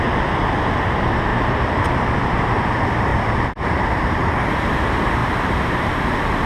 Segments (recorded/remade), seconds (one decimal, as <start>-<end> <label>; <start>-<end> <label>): 0.0-1.3 recorded; 1.3-2.6 remade; 2.6-3.1 recorded; 3.1-4.5 remade; 4.5-5.2 recorded; 5.2-6.0 remade; 6.0-6.5 recorded